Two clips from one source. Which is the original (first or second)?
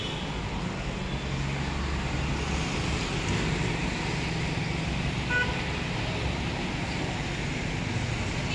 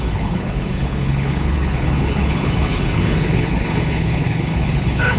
first